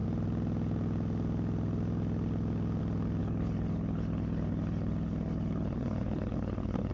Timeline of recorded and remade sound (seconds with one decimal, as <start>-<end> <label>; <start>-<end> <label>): 0.0-3.2 recorded; 3.2-6.9 remade